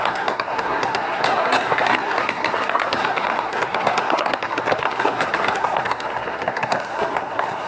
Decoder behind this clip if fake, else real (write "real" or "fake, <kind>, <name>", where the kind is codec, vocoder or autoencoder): fake, codec, SNAC